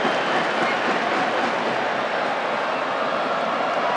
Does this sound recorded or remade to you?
recorded